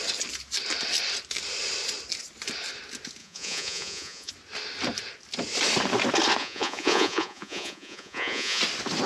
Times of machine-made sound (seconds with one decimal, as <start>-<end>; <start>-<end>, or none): 3.2-4.3; 6.4-8.6